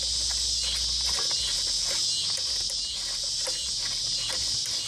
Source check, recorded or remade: recorded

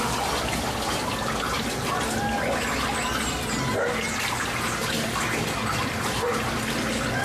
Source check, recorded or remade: recorded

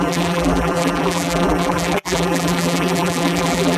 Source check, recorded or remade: remade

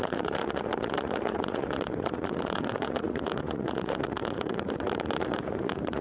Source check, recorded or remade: remade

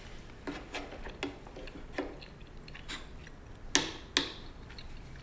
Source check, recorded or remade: recorded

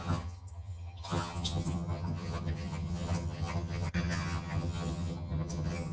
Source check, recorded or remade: remade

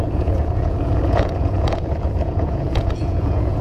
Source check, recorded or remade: remade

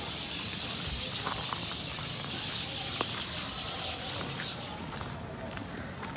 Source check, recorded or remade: remade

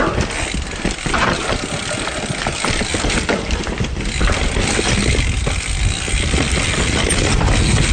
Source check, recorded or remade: recorded